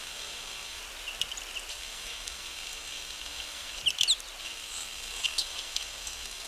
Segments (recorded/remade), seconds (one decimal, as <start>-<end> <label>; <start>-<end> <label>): 0.0-0.8 remade; 0.8-1.7 recorded; 1.7-3.8 remade; 3.8-4.4 recorded; 4.4-6.5 remade